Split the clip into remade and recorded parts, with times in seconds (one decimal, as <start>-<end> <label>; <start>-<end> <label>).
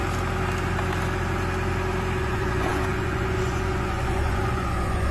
0.0-2.2 recorded; 2.2-5.1 remade